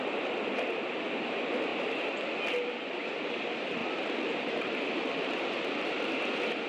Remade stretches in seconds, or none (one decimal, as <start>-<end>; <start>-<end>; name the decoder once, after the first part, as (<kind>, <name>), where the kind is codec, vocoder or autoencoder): 3.8-5.7 (vocoder, BigVGAN v2)